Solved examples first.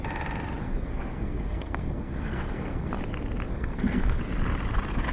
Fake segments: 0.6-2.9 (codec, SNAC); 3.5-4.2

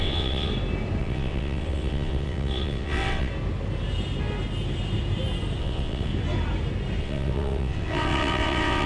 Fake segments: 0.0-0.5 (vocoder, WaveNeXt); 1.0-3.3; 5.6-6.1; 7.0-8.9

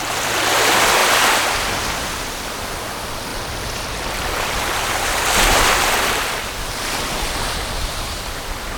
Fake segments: 1.0-2.4 (vocoder, BigVGAN v2); 3.3-8.2

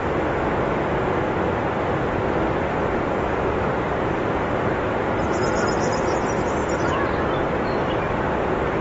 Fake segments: 3.5-5.4 (vocoder, BigVGAN v2)

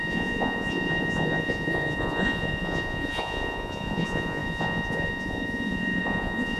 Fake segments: 0.0-6.6 (vocoder, Vocos)